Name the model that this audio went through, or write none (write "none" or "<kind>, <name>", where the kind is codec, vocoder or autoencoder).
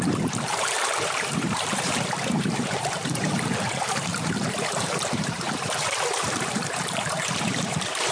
vocoder, BigVGAN v2